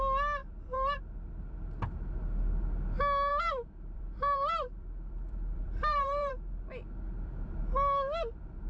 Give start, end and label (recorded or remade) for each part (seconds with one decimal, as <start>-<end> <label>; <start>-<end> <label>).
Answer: 0.0-0.4 recorded; 0.4-1.0 remade; 1.0-3.3 recorded; 3.3-6.6 remade; 6.6-8.7 recorded